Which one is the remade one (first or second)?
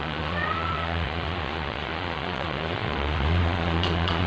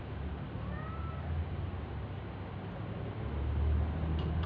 first